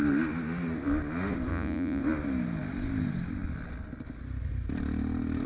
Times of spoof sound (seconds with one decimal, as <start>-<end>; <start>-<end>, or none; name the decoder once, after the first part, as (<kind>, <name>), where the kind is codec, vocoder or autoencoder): 1.5-2.0 (vocoder, Vocos)